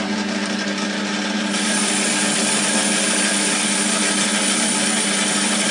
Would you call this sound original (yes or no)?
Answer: yes